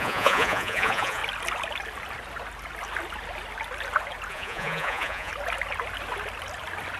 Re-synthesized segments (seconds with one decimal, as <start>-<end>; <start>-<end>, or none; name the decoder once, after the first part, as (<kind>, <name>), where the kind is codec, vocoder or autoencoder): 0.0-1.2 (vocoder, Vocos); 4.3-5.3